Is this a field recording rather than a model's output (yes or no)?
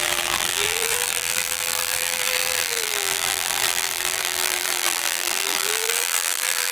no